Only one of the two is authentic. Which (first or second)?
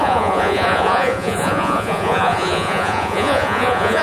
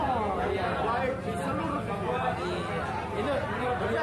second